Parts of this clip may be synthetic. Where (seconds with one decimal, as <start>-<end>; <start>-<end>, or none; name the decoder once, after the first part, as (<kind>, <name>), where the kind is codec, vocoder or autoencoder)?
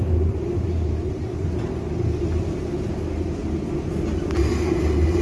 3.4-4.1 (vocoder, BigVGAN v2)